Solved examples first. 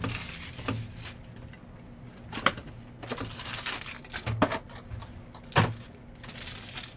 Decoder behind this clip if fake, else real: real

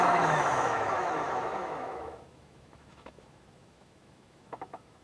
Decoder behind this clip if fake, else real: fake, autoencoder, DAC-VAE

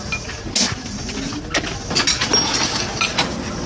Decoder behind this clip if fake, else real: real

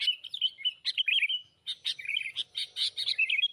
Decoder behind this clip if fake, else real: real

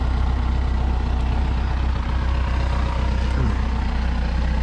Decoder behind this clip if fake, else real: real